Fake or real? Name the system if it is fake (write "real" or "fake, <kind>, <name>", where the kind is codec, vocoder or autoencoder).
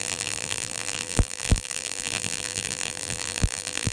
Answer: fake, vocoder, BigVGAN v2